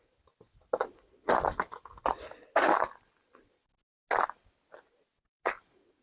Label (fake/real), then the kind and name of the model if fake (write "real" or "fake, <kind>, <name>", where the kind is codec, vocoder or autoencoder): real